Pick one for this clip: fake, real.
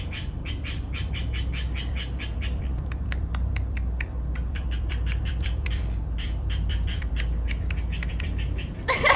fake